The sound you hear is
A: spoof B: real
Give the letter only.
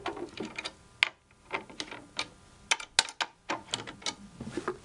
B